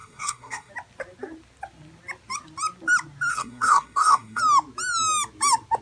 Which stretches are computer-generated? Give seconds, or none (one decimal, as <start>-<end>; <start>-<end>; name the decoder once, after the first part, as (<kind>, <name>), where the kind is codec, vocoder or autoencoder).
0.0-0.7 (codec, SNAC); 3.3-4.4